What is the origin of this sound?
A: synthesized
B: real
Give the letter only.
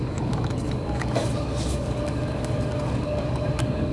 A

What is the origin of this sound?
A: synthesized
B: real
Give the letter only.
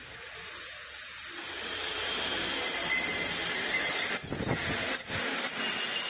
A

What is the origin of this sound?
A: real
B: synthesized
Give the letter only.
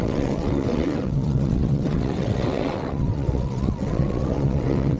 B